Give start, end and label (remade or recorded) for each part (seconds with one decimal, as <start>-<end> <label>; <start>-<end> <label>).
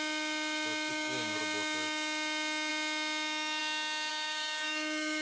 0.0-0.9 recorded; 0.9-1.4 remade; 1.4-4.1 recorded; 4.1-5.2 remade